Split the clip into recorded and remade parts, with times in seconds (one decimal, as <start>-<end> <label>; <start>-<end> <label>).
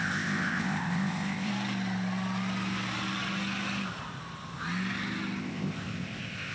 0.0-1.5 remade; 1.5-5.4 recorded; 5.4-6.5 remade